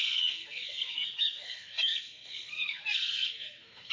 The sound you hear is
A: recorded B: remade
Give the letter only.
B